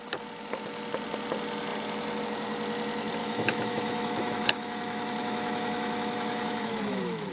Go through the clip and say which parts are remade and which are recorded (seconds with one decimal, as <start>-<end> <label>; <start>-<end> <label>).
0.0-3.2 recorded; 3.2-7.3 remade